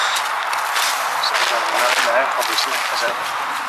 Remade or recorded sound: remade